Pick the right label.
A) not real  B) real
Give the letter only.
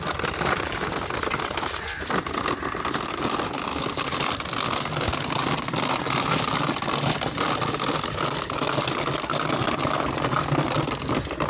B